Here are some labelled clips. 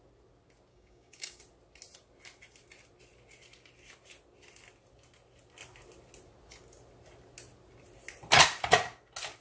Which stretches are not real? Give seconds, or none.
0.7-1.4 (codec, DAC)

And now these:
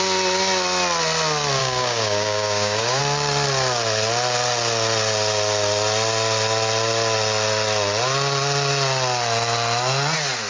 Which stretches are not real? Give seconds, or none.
1.6-3.0 (codec, DAC)